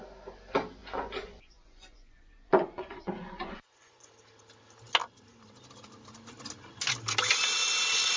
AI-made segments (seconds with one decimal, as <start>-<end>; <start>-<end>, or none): 0.8-4.1

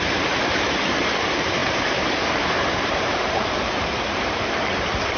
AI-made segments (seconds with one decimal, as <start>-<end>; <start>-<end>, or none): 0.0-5.2

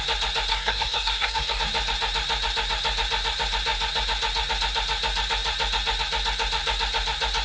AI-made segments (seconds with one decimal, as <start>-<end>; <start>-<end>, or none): 0.5-1.6